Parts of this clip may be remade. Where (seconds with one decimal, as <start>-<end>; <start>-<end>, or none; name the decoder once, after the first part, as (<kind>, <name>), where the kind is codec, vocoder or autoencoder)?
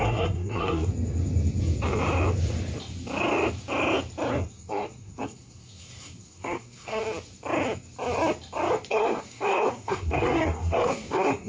0.0-0.9 (codec, SNAC); 4.3-7.0; 8.9-11.5